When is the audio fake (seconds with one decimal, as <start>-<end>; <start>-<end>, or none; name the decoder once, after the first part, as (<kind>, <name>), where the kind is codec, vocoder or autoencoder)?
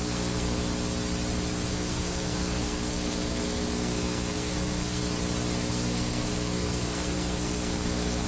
0.0-0.7 (codec, SNAC); 1.7-5.0; 5.7-8.3